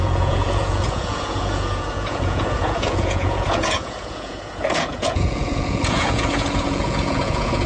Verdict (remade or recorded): remade